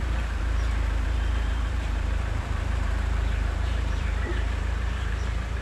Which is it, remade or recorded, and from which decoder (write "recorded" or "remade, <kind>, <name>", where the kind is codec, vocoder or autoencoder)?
remade, vocoder, BigVGAN v2